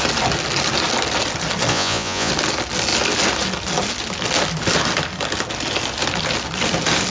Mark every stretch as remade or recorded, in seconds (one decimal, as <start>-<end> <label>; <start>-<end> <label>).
0.0-1.7 recorded; 1.7-2.3 remade; 2.3-7.1 recorded